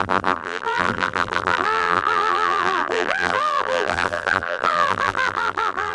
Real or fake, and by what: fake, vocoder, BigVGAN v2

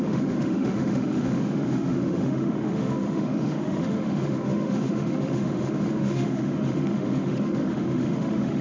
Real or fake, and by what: fake, autoencoder, DAC-VAE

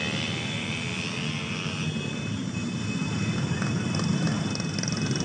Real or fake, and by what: real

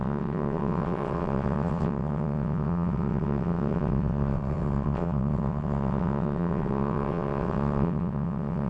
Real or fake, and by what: fake, vocoder, WaveNeXt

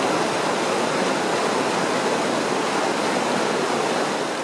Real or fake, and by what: real